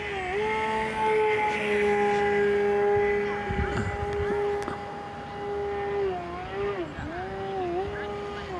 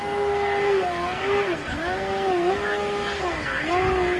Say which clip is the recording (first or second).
first